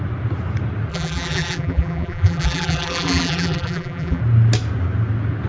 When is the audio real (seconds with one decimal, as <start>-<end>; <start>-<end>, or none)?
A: 0.0-0.9; 4.2-5.5